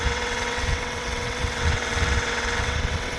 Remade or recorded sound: remade